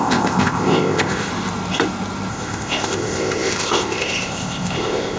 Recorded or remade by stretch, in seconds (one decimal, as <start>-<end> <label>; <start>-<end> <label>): 0.0-1.3 remade; 1.3-2.3 recorded; 2.3-5.2 remade